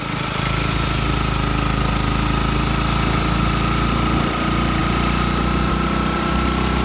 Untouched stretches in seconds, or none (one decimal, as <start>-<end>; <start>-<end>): 0.0-6.8